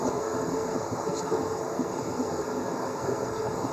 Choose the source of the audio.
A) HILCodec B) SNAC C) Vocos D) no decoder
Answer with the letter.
B